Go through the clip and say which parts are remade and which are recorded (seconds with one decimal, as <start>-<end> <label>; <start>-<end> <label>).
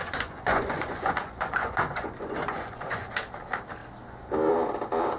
0.0-3.1 remade; 3.1-5.2 recorded